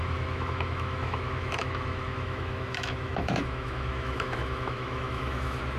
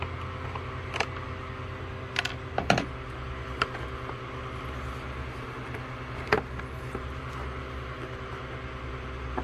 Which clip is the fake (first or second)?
first